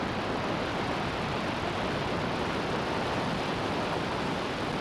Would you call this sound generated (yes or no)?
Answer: no